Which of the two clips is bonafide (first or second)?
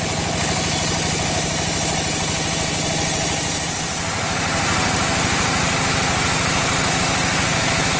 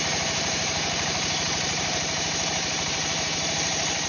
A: first